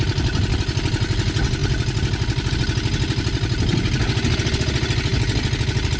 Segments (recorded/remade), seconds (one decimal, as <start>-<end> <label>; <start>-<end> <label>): 0.0-6.0 recorded